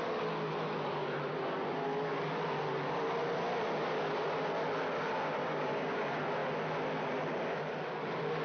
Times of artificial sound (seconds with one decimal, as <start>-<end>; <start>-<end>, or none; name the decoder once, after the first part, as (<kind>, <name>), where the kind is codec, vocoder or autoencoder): 5.4-6.0 (codec, DAC)